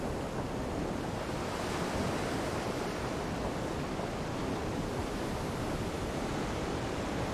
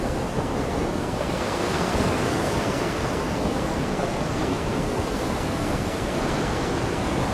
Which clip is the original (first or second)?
first